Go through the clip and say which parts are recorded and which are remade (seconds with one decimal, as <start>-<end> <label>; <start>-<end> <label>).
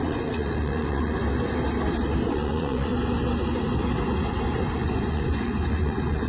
0.0-1.2 remade; 1.2-2.3 recorded; 2.3-2.9 remade; 2.9-4.8 recorded; 4.8-6.3 remade